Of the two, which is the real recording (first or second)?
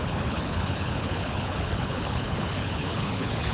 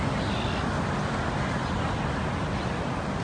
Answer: second